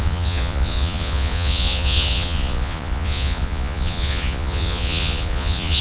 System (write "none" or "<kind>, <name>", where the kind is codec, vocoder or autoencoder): vocoder, Vocos